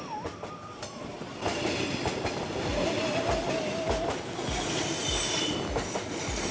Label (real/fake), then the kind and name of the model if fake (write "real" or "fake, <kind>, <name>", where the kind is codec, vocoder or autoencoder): real